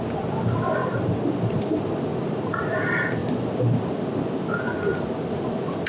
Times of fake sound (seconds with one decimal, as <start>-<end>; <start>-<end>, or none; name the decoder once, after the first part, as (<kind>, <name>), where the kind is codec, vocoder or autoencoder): none